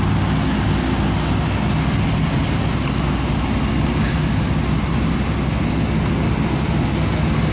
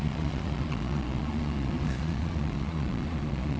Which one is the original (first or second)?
first